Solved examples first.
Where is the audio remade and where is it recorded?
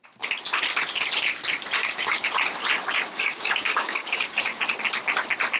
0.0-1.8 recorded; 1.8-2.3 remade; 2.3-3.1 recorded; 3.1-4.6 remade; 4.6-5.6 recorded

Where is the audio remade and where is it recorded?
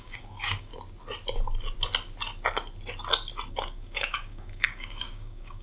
0.0-0.7 remade; 0.7-3.5 recorded; 3.5-5.6 remade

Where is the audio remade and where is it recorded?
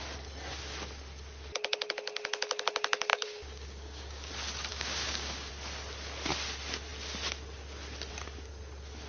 0.0-3.1 recorded; 3.1-4.3 remade; 4.3-4.7 recorded; 4.7-5.5 remade; 5.5-9.1 recorded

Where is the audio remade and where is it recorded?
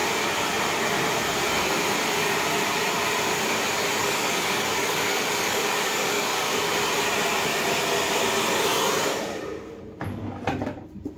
0.0-4.0 recorded; 4.0-6.6 remade; 6.6-11.2 recorded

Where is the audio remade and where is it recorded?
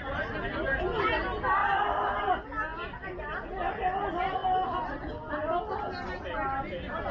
0.0-7.1 recorded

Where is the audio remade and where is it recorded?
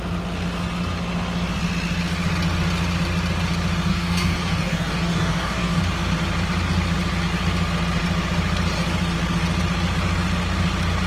0.0-3.9 recorded; 3.9-5.8 remade; 5.8-11.1 recorded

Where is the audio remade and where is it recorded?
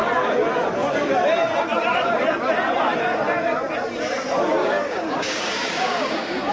0.0-4.6 recorded; 4.6-6.5 remade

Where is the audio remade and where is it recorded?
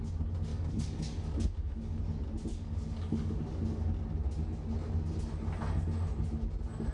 0.0-0.5 recorded; 0.5-2.0 remade; 2.0-2.5 recorded; 2.5-3.4 remade; 3.4-6.9 recorded